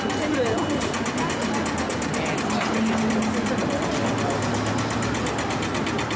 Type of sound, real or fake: real